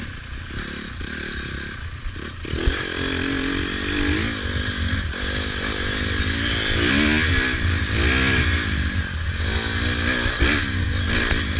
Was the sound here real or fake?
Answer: real